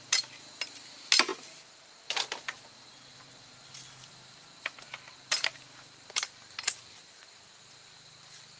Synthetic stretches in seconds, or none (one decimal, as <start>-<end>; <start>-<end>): none